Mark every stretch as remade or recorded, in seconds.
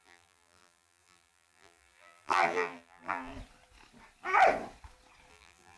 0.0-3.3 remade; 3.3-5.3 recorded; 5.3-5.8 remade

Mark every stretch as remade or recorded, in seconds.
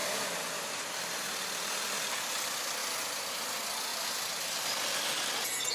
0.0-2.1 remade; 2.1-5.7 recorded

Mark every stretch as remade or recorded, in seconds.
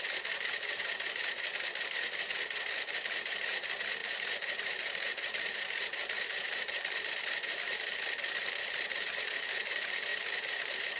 0.0-11.0 remade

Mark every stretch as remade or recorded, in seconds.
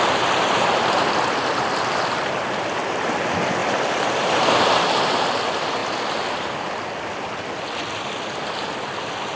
0.0-3.6 recorded; 3.6-4.8 remade; 4.8-9.4 recorded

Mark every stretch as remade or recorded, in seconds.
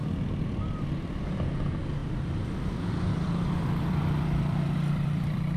0.0-5.6 remade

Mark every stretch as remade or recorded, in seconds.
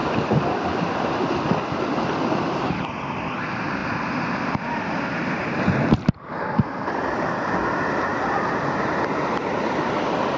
0.0-1.1 remade; 1.1-10.4 recorded